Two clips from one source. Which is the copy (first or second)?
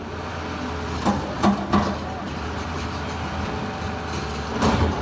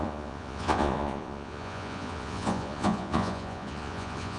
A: second